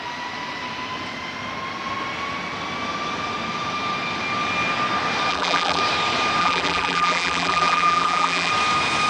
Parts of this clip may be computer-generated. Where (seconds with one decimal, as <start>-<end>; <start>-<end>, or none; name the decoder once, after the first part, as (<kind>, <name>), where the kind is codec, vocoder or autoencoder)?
5.3-5.8 (vocoder, BigVGAN v2); 6.4-8.5